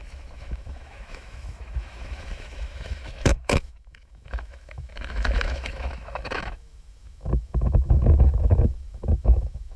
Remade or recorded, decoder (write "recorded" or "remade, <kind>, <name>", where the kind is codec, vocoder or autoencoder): remade, autoencoder, DAC-VAE